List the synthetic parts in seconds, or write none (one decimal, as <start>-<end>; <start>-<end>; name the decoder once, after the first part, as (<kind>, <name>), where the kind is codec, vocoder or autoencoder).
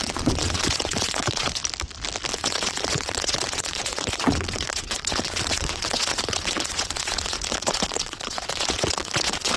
0.0-1.6 (vocoder, WaveNeXt); 2.3-9.6